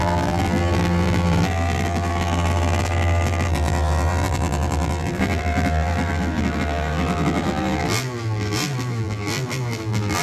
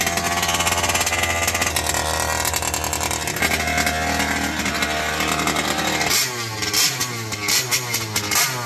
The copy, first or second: first